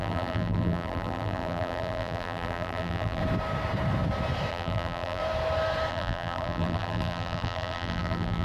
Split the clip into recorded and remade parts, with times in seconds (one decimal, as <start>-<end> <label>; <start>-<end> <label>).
0.0-3.2 remade; 3.2-4.5 recorded; 4.5-5.2 remade; 5.2-5.9 recorded; 5.9-8.4 remade